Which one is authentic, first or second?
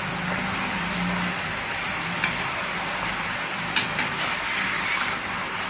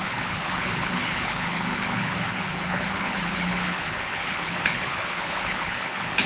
first